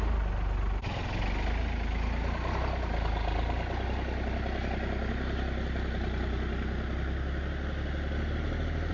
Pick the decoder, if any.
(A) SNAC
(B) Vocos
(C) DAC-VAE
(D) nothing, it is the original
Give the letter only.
D